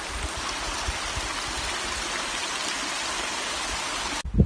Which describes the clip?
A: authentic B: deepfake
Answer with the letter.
A